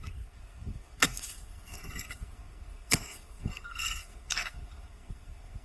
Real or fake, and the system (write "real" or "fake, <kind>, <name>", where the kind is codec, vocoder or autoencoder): fake, codec, SNAC